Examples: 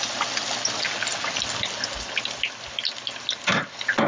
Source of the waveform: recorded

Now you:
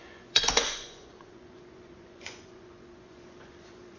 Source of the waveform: remade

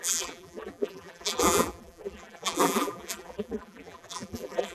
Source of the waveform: remade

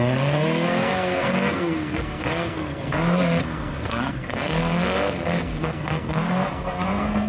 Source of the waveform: remade